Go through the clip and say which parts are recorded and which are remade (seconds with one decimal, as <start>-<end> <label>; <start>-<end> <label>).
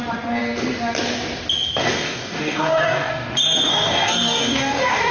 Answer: 0.0-1.8 recorded; 1.8-3.1 remade; 3.1-3.7 recorded; 3.7-5.1 remade